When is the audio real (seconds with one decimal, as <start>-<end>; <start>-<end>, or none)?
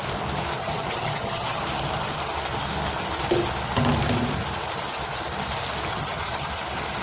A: 0.0-0.6; 1.6-5.9; 6.5-7.0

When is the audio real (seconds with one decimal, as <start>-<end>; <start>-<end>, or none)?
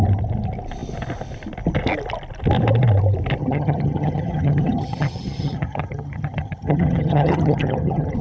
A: 0.0-3.4